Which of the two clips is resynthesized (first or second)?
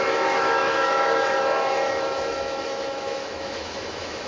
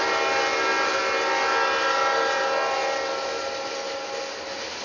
first